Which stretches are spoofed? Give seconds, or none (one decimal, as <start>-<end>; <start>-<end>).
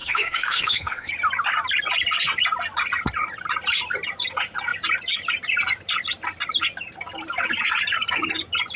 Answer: 0.0-1.1